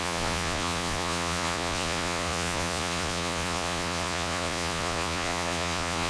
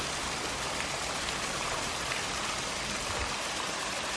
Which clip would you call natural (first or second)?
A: second